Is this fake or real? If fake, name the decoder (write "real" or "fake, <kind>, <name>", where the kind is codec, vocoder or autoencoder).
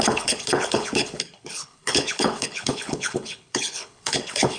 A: fake, codec, HILCodec